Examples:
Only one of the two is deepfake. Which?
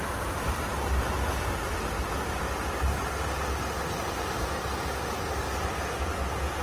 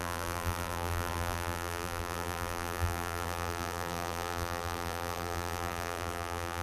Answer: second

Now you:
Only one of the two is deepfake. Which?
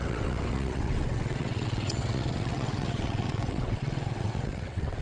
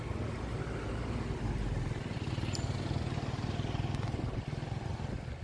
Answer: first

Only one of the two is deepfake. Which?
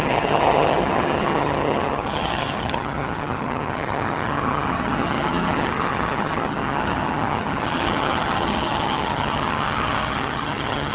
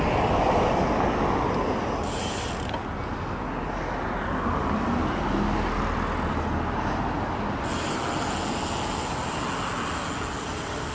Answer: first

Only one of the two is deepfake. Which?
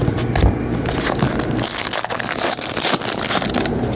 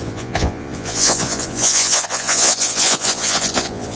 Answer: second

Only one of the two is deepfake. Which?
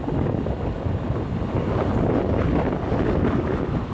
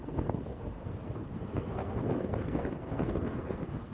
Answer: second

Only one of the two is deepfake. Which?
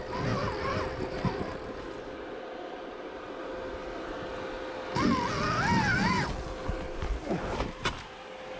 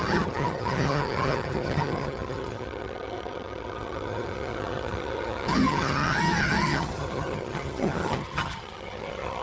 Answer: second